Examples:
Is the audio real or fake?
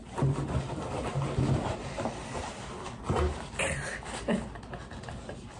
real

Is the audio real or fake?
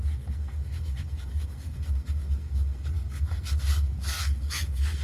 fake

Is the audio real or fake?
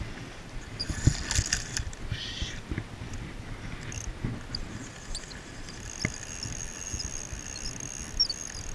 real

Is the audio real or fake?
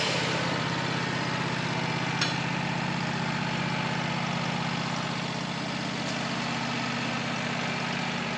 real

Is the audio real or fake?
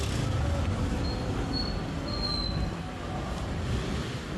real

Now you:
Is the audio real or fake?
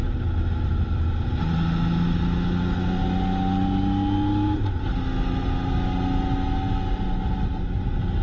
real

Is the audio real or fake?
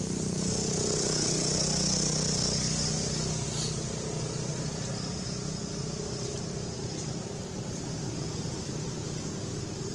real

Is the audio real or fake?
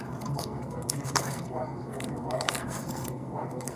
fake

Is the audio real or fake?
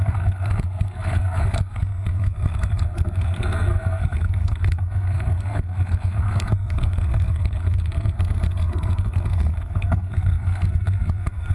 fake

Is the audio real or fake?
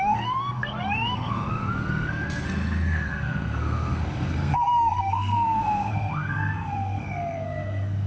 fake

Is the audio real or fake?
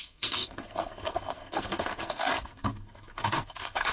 fake